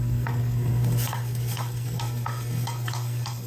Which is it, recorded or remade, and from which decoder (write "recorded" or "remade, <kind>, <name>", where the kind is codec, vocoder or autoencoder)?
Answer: remade, codec, SNAC